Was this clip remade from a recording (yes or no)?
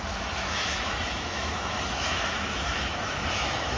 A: yes